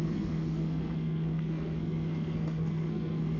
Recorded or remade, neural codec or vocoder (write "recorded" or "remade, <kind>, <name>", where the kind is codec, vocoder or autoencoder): remade, codec, SNAC